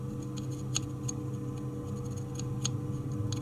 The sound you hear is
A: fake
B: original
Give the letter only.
B